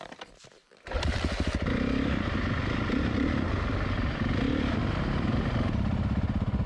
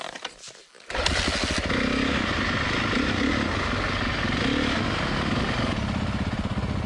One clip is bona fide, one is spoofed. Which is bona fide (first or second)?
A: second